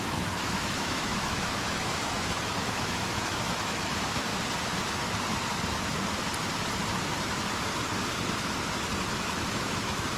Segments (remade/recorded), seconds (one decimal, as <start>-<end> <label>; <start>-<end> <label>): 0.0-4.3 remade; 4.3-9.1 recorded; 9.1-10.2 remade